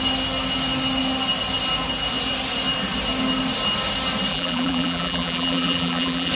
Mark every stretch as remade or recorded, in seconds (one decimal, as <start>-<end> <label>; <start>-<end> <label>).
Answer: 0.0-4.3 recorded; 4.3-6.3 remade